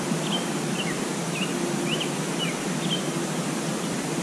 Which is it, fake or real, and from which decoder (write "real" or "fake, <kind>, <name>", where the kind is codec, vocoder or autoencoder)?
real